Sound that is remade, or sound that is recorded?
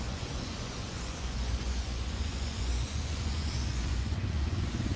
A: remade